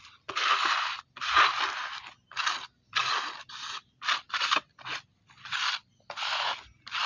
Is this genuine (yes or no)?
yes